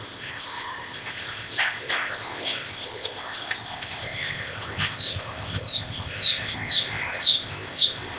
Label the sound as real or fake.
fake